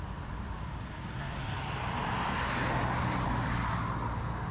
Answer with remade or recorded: recorded